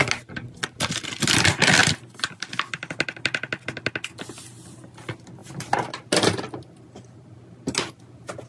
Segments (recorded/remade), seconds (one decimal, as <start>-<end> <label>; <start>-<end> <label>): 0.0-8.5 recorded